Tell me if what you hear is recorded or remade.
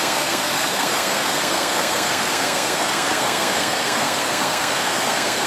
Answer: remade